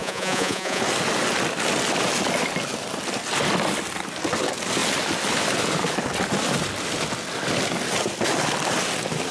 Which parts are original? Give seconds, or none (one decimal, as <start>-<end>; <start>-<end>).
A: 0.8-9.3